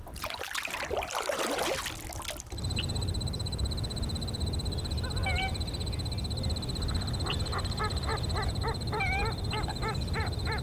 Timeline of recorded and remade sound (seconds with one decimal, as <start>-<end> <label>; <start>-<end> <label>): 0.0-8.1 recorded; 8.1-10.6 remade